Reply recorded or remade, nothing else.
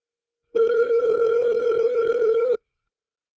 remade